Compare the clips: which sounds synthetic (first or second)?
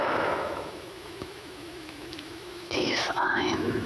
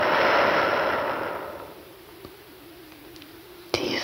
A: first